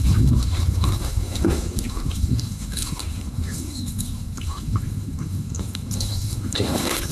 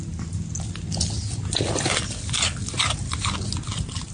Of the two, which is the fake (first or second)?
first